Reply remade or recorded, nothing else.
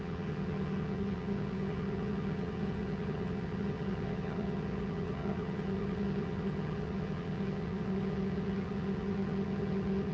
remade